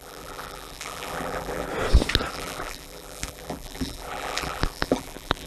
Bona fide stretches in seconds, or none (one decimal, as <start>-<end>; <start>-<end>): 1.7-2.3

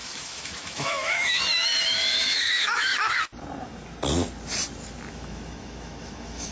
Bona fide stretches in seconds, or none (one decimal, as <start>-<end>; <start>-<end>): 2.9-5.1

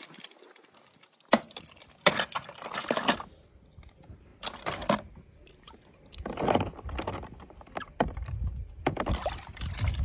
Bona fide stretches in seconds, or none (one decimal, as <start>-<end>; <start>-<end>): 0.0-10.0